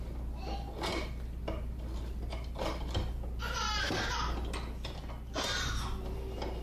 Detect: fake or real real